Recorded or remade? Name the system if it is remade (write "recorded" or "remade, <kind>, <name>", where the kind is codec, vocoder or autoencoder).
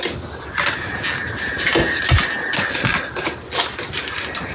recorded